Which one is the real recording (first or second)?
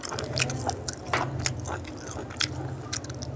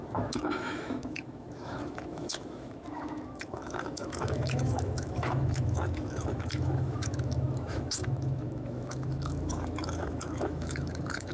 first